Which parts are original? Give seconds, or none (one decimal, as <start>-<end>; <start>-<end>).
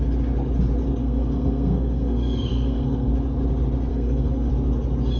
0.0-1.0; 3.1-3.9; 4.5-5.2